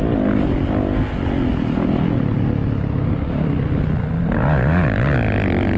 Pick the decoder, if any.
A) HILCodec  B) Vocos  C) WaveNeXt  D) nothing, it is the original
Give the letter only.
D